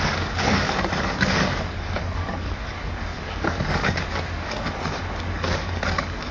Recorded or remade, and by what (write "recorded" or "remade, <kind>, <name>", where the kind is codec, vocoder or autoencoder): remade, codec, DAC